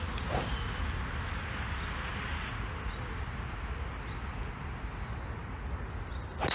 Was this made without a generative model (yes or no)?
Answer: yes